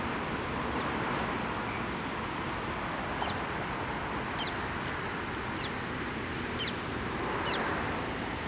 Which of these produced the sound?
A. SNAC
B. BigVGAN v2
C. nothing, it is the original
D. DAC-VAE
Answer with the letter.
C